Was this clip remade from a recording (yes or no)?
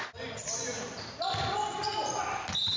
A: no